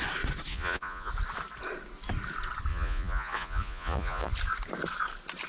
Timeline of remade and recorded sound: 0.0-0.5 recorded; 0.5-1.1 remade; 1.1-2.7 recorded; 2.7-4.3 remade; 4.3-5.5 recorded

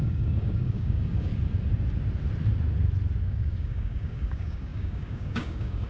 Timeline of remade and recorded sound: 0.0-1.3 remade; 1.3-3.2 recorded; 3.2-5.9 remade

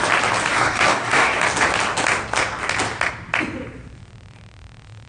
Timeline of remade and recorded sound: 0.0-0.5 recorded; 0.5-1.4 remade; 1.4-5.1 recorded

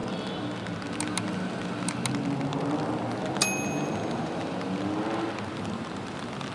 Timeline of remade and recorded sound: 0.0-6.5 recorded

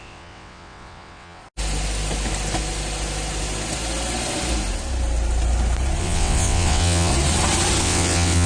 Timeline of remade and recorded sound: 0.0-1.4 remade; 1.4-6.0 recorded; 6.0-7.1 remade; 7.1-7.8 recorded; 7.8-8.5 remade